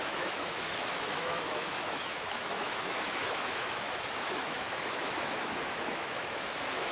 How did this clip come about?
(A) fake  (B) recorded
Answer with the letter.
A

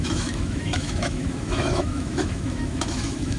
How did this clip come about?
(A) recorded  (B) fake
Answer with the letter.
B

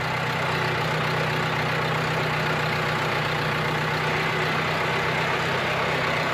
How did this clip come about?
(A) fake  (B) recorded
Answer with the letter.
B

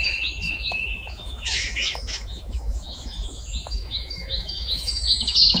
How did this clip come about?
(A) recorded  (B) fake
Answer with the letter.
B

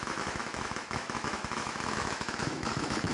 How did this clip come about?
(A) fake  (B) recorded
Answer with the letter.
A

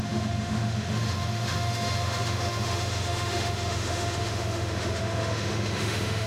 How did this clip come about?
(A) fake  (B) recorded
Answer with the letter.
A